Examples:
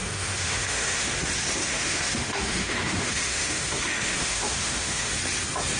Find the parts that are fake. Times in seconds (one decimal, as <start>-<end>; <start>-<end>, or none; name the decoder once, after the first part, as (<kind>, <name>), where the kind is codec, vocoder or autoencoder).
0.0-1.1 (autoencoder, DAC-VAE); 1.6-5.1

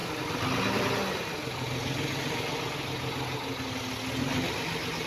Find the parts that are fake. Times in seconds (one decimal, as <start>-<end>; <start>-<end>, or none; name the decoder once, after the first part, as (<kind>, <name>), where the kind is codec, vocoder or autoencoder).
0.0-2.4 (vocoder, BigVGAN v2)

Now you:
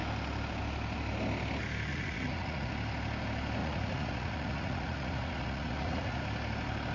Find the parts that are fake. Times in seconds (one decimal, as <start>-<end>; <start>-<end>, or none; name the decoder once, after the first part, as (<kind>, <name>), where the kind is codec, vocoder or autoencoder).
1.9-2.7 (vocoder, Vocos); 3.6-6.2

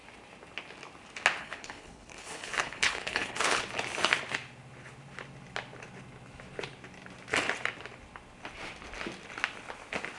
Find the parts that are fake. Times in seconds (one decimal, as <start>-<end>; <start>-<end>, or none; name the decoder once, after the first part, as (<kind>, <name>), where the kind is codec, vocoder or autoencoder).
1.4-3.6 (codec, HILCodec)

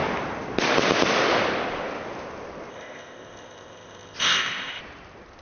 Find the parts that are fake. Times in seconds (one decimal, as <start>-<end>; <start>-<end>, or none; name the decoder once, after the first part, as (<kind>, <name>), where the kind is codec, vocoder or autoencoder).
2.7-4.8 (codec, ZipCodec)

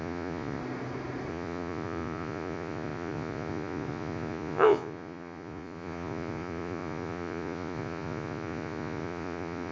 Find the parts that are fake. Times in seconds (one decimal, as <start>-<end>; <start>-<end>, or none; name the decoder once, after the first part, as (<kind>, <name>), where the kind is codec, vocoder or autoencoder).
0.0-0.6 (vocoder, Vocos); 1.3-9.7

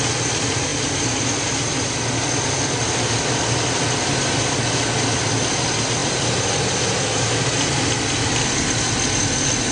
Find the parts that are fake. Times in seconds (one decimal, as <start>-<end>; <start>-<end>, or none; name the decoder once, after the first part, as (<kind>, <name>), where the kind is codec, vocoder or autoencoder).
none

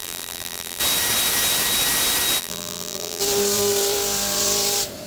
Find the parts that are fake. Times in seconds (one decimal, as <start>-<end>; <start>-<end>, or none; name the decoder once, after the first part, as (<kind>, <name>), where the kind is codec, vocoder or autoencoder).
0.0-0.8 (vocoder, BigVGAN v2); 2.4-3.2